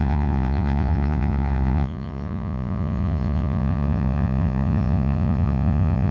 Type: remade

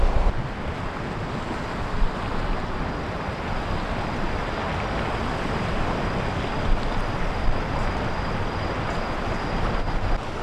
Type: recorded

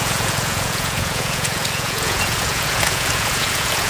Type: remade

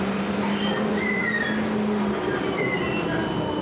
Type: recorded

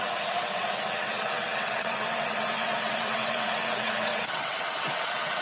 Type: remade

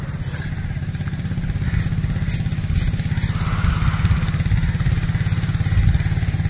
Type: recorded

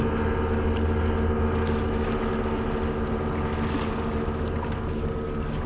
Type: recorded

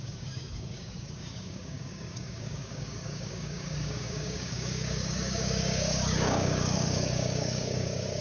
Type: remade